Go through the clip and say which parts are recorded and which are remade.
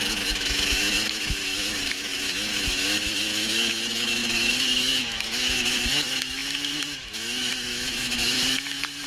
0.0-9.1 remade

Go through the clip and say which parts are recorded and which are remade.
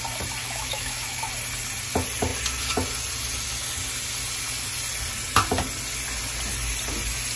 0.0-0.4 recorded; 0.4-1.3 remade; 1.3-7.4 recorded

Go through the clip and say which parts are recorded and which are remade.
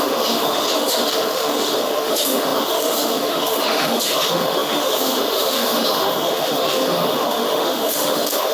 0.0-8.5 remade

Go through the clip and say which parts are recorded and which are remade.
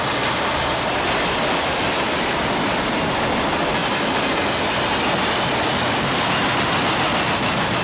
0.0-7.8 recorded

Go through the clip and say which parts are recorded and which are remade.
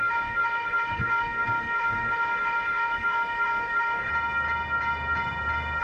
0.0-4.1 remade; 4.1-5.8 recorded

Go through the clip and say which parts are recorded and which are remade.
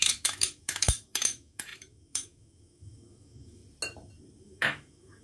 0.0-3.6 remade; 3.6-4.4 recorded; 4.4-5.2 remade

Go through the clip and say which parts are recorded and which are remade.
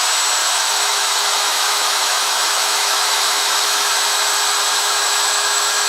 0.0-0.4 recorded; 0.4-3.9 remade; 3.9-4.7 recorded; 4.7-5.9 remade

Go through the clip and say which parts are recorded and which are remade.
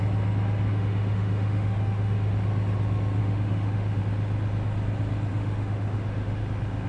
0.0-0.7 recorded; 0.7-2.3 remade; 2.3-3.2 recorded; 3.2-4.0 remade; 4.0-5.3 recorded; 5.3-6.4 remade; 6.4-6.9 recorded